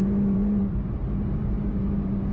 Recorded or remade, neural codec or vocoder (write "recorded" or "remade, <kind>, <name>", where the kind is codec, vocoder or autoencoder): remade, vocoder, BigVGAN v2